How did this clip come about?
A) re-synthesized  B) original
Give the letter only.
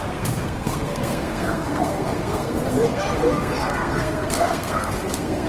A